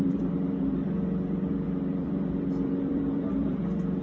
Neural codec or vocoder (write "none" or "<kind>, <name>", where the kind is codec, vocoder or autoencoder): vocoder, BigVGAN v2